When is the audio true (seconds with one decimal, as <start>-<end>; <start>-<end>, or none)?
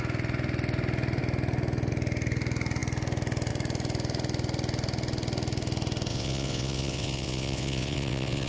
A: 0.0-6.1